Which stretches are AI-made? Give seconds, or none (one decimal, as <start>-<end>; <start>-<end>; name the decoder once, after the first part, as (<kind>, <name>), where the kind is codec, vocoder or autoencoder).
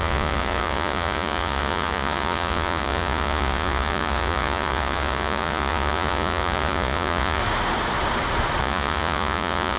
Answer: 0.0-7.4 (vocoder, Vocos); 8.6-9.8